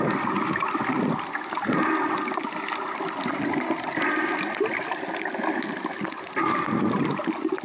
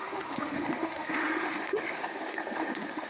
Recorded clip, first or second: first